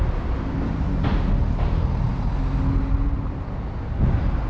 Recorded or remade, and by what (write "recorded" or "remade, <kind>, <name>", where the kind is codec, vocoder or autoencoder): recorded